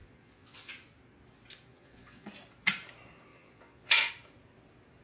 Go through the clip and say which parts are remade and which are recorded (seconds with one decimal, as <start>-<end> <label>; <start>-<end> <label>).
0.0-0.7 remade; 0.7-1.7 recorded; 1.7-2.3 remade; 2.3-3.3 recorded; 3.3-4.1 remade; 4.1-5.0 recorded